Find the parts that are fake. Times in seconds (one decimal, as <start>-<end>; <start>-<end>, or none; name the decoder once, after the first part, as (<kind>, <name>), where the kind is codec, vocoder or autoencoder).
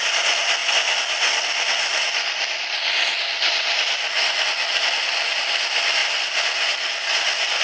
none